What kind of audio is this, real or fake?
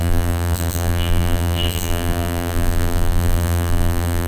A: fake